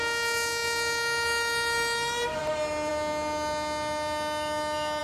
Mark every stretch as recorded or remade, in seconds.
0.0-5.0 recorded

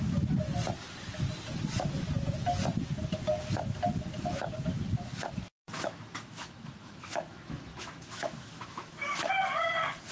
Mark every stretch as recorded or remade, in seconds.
0.0-5.6 recorded; 5.6-9.3 remade; 9.3-10.1 recorded

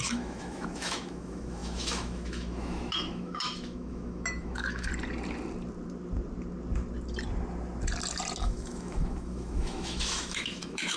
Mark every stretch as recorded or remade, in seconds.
0.0-4.9 remade; 4.9-8.4 recorded; 8.4-11.0 remade

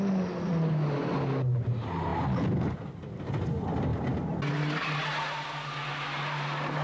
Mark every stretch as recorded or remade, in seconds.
0.0-6.8 recorded

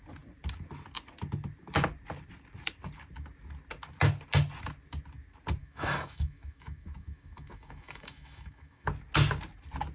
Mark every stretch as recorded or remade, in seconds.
0.0-5.6 recorded; 5.6-8.9 remade; 8.9-9.9 recorded

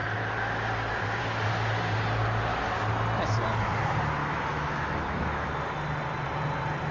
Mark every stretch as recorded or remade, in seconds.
0.0-4.2 recorded; 4.2-5.5 remade; 5.5-6.9 recorded

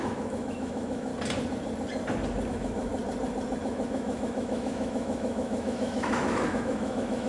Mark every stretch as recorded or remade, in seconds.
0.0-1.1 remade; 1.1-2.5 recorded; 2.5-2.9 remade; 2.9-3.6 recorded; 3.6-7.3 remade

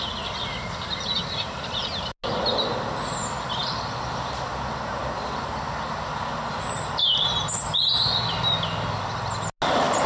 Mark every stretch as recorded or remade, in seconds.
0.0-10.1 recorded